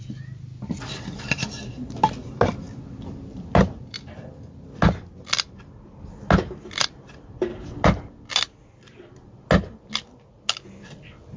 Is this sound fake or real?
real